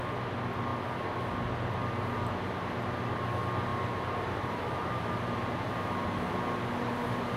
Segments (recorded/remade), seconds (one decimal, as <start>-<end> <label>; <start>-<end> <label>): 0.0-3.7 recorded; 3.7-6.3 remade; 6.3-7.4 recorded